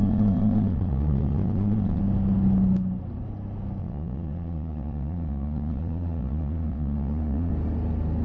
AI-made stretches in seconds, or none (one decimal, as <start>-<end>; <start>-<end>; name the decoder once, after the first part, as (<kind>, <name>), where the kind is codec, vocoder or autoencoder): 0.0-2.0 (vocoder, Vocos); 3.8-7.5